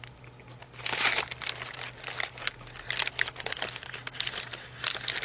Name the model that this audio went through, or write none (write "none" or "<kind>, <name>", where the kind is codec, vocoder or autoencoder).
none